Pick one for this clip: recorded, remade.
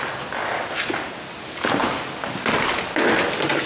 recorded